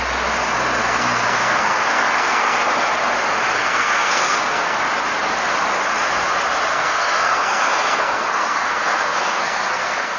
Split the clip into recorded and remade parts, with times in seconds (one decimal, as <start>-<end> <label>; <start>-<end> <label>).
0.0-0.8 recorded; 0.8-2.6 remade; 2.6-3.6 recorded; 3.6-4.8 remade; 4.8-6.7 recorded; 6.7-10.2 remade